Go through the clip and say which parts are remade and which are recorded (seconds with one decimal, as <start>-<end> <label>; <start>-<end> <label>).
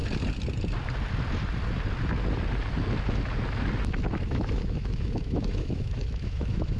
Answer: 0.0-4.1 recorded; 4.1-6.8 remade